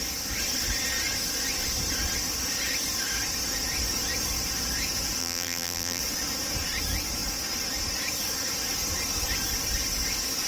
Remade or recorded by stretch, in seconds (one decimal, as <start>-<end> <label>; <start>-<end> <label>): 0.0-5.2 recorded; 5.2-6.0 remade; 6.0-10.5 recorded